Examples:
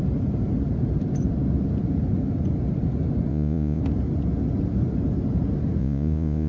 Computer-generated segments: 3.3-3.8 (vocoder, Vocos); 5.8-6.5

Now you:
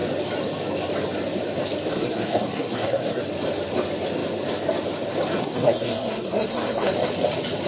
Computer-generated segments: 1.9-3.2 (codec, SNAC); 5.4-6.9

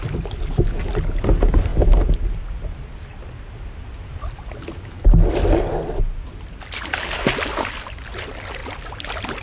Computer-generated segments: none

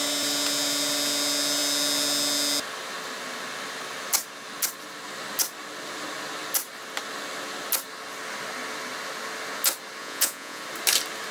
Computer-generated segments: 10.0-10.6 (vocoder, Vocos)

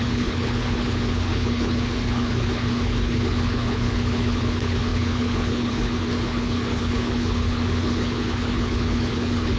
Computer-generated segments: 0.0-9.6 (codec, HILCodec)

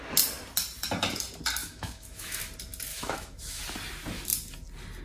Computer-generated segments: 1.6-2.4 (autoencoder, DAC-VAE); 2.9-3.6

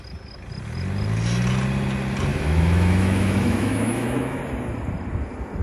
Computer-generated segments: 2.3-4.4 (autoencoder, DAC-VAE)